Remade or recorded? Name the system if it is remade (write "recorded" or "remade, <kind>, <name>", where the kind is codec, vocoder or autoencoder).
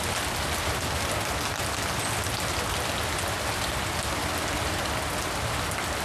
recorded